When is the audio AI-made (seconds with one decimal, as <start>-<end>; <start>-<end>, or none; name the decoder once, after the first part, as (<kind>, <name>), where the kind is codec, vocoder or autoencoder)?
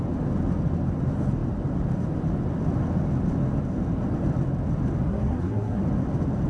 5.1-5.8 (codec, SNAC)